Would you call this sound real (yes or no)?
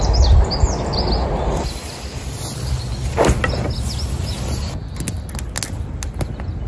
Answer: yes